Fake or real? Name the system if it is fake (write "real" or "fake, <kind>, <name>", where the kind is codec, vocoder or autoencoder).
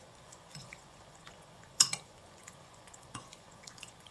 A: fake, vocoder, Vocos